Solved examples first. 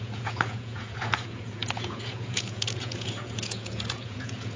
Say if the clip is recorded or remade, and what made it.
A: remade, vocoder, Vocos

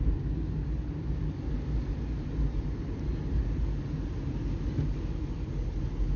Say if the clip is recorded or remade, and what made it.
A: recorded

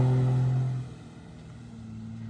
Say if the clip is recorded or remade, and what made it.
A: recorded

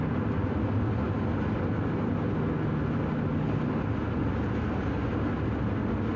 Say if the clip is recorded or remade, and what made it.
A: recorded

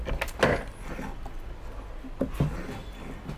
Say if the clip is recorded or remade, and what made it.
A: recorded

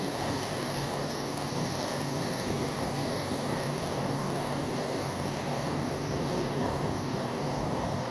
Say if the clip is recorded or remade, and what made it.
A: remade, codec, DAC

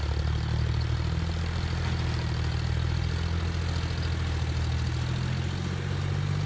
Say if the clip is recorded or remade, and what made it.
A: recorded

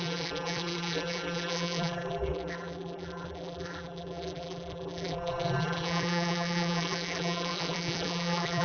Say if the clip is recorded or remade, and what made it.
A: remade, vocoder, BigVGAN v2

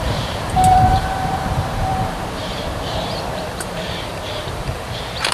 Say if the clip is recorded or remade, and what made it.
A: remade, vocoder, BigVGAN v2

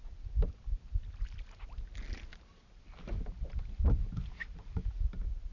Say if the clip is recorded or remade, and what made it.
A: recorded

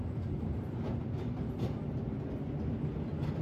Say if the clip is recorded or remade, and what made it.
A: recorded